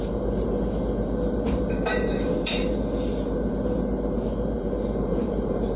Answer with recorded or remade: remade